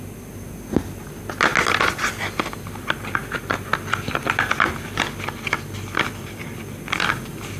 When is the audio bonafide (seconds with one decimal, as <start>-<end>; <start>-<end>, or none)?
0.0-7.6